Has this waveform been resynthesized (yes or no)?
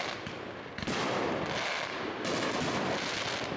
no